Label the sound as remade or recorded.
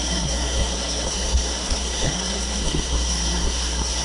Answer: remade